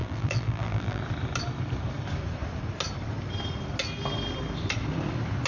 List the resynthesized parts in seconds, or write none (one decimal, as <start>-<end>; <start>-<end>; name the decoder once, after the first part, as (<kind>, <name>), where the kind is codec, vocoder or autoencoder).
0.0-1.0 (vocoder, BigVGAN v2)